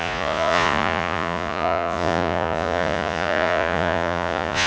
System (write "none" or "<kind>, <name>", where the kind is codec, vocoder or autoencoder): vocoder, Vocos